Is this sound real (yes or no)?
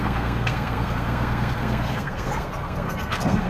no